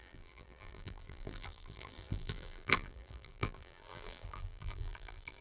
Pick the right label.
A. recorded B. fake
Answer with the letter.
B